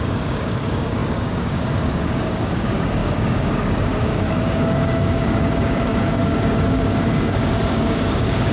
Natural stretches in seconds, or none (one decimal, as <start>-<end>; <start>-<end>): none